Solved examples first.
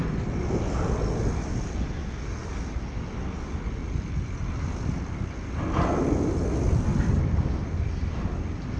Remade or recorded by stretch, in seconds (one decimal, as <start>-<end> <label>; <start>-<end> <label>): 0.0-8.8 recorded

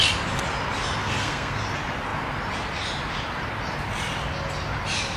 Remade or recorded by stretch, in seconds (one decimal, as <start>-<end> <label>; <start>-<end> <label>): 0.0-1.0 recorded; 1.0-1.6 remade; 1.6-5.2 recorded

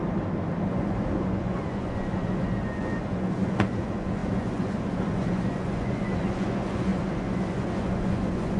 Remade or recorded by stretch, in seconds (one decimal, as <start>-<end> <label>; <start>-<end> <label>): 0.0-0.7 recorded; 0.7-8.6 remade

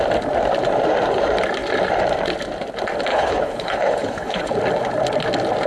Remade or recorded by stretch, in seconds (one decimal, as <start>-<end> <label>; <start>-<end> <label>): 0.0-3.1 recorded; 3.1-4.5 remade; 4.5-5.7 recorded

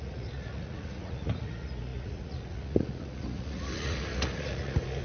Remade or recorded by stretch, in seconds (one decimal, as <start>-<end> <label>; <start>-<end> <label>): 0.0-5.0 remade

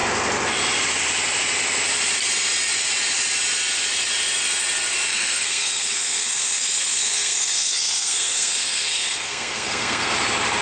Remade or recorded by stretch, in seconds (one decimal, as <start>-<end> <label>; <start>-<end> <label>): 0.0-5.1 recorded; 5.1-10.1 remade; 10.1-10.6 recorded

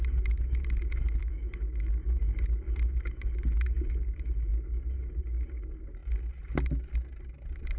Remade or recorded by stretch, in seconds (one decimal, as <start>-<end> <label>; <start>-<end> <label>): 0.0-1.2 recorded; 1.2-2.2 remade; 2.2-7.8 recorded

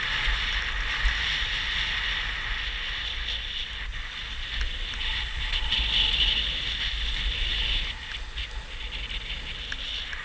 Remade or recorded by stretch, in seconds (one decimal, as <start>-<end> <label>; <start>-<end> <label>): 0.0-10.2 recorded